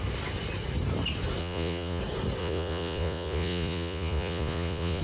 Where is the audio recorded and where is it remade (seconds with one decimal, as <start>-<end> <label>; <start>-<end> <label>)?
0.0-1.4 recorded; 1.4-2.0 remade; 2.0-2.4 recorded; 2.4-5.0 remade